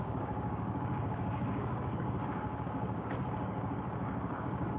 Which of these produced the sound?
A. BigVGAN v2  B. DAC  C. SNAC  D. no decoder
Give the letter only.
B